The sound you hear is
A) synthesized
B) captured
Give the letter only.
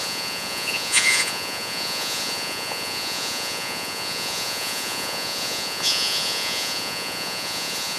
A